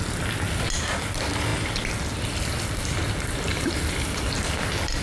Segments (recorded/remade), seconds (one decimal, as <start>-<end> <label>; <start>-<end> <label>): 0.0-3.5 recorded; 3.5-4.3 remade; 4.3-5.0 recorded